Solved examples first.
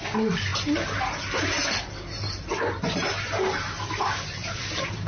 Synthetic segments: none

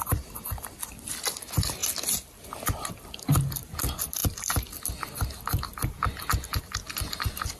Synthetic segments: none

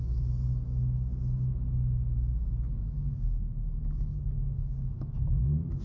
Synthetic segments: 0.0-1.1 (codec, DAC); 2.8-5.8

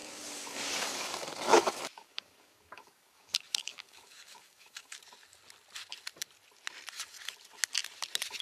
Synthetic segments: 0.0-5.0 (codec, DAC)

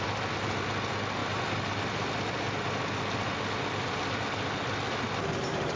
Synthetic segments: none

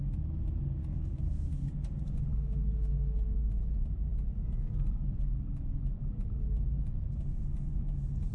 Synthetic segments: 0.8-1.7 (codec, DAC); 2.3-3.5

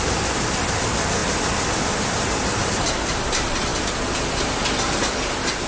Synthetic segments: none